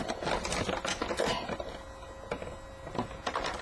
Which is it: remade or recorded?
recorded